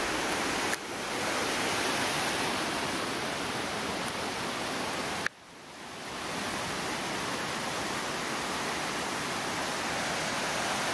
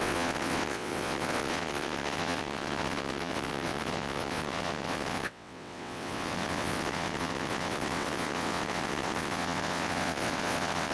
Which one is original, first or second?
first